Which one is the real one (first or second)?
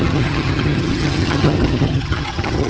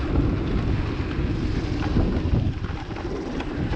second